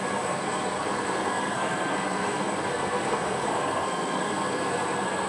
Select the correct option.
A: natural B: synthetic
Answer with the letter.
B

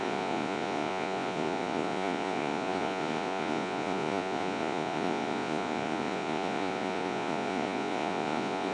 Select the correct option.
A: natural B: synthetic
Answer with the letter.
B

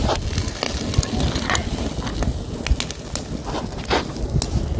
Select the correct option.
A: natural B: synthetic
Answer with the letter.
A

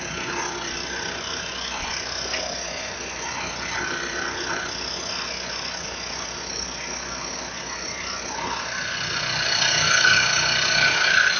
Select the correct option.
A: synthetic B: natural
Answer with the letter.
A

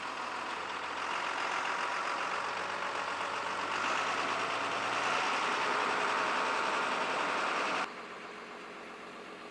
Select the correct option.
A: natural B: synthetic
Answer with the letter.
A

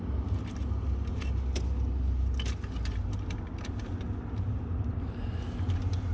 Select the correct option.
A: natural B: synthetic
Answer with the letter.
A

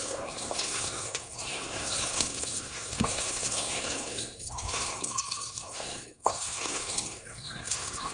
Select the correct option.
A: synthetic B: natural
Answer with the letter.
A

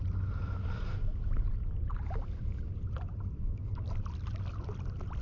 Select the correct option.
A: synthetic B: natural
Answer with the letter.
B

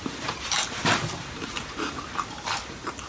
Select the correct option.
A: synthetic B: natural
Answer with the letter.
A